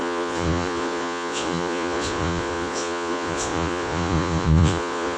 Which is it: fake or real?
fake